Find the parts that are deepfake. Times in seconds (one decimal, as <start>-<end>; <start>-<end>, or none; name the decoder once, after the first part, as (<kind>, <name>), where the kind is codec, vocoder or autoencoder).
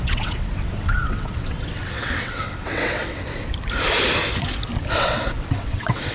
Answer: 0.0-3.3 (vocoder, WaveNeXt); 4.9-6.1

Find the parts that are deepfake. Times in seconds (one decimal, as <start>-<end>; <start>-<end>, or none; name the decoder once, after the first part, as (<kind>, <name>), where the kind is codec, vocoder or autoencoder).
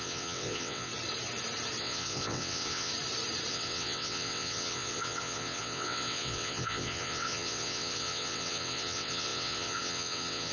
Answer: 0.0-0.9 (vocoder, WaveNeXt); 1.8-2.9; 3.5-10.5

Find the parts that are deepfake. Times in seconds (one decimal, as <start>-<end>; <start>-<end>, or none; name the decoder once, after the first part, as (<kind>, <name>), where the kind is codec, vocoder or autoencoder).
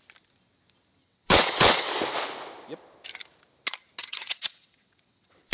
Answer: 1.0-1.9 (vocoder, WaveNeXt); 4.0-5.5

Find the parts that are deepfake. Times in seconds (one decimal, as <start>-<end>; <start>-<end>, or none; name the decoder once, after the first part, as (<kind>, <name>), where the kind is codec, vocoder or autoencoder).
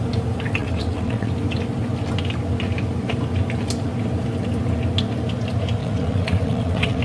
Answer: 0.6-1.3 (vocoder, WaveNeXt); 5.8-7.0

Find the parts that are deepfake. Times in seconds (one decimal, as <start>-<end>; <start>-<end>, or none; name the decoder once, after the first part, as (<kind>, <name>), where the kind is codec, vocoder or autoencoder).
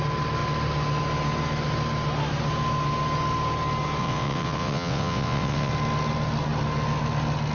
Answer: 4.0-5.7 (vocoder, WaveNeXt)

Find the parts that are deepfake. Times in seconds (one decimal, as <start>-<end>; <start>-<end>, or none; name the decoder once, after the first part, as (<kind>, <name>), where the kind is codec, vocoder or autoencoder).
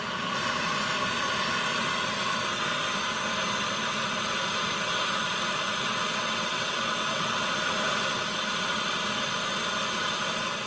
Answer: 6.2-7.4 (vocoder, WaveNeXt)